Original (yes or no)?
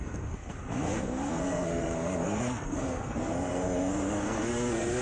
no